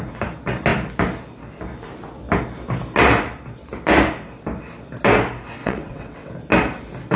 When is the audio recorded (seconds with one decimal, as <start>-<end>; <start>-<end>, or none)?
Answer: 0.0-5.6; 6.3-7.2